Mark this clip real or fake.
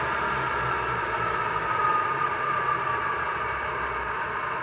real